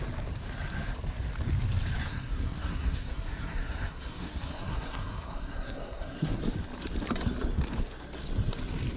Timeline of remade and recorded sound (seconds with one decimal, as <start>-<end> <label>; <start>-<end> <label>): 0.0-2.1 recorded; 2.1-6.4 remade; 6.4-9.0 recorded